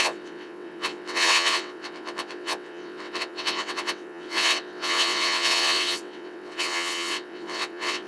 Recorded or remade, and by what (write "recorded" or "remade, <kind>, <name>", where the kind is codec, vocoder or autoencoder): remade, vocoder, WaveNeXt